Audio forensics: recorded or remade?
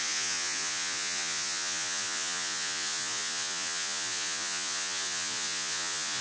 remade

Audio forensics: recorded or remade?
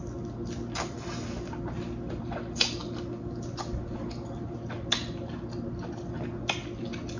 recorded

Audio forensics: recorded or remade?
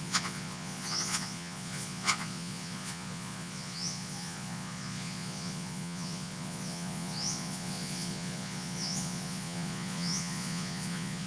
remade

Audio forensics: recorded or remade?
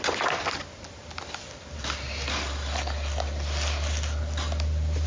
recorded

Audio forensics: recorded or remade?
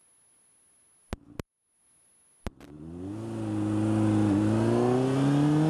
recorded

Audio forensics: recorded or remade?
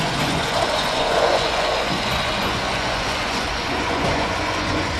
remade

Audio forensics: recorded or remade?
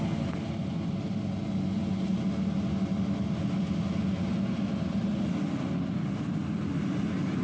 recorded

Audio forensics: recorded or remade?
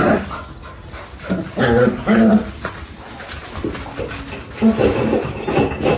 recorded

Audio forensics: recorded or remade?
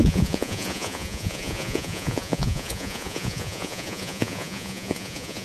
remade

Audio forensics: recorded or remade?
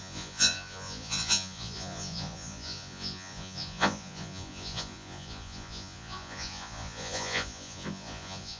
remade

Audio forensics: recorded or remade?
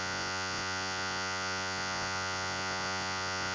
remade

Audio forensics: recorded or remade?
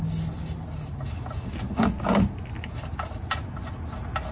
recorded